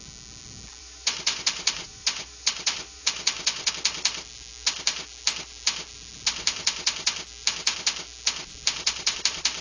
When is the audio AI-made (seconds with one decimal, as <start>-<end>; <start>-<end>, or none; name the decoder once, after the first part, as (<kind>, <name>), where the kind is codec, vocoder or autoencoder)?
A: 0.8-3.7 (vocoder, Vocos)